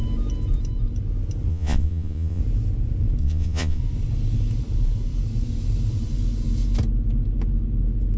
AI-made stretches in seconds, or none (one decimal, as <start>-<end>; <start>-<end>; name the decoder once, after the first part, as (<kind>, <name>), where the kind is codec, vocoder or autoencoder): 1.5-2.4 (vocoder, Vocos); 3.2-3.8